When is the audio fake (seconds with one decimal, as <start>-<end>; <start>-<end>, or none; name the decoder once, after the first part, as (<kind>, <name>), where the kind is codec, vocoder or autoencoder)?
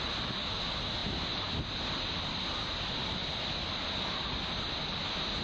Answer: none